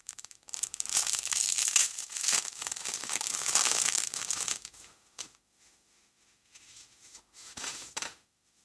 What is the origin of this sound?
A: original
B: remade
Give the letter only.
B